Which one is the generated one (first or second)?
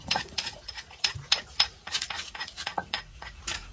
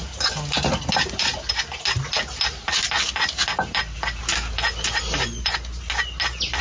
first